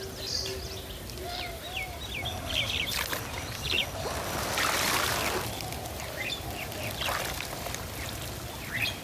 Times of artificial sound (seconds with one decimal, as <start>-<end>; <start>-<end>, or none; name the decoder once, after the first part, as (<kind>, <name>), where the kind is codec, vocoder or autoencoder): none